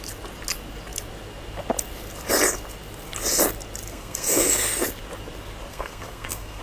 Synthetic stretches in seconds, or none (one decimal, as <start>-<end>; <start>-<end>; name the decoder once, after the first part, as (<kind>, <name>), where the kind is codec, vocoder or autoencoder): 3.9-4.5 (codec, SNAC); 5.7-6.6